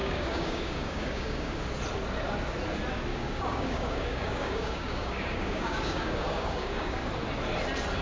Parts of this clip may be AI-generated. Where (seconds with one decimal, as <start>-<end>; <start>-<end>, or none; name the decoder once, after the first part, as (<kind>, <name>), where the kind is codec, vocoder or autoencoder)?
0.0-1.6 (codec, DAC); 3.1-7.1